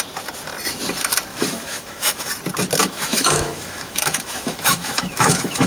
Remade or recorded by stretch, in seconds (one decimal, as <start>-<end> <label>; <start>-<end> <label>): 0.0-1.3 recorded; 1.3-2.3 remade; 2.3-2.8 recorded; 2.8-5.7 remade